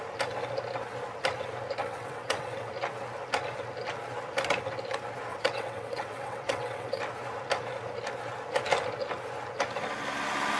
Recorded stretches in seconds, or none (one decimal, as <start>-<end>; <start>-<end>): 0.0-1.8; 2.7-5.3; 7.0-10.6